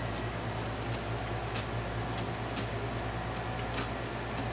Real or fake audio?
real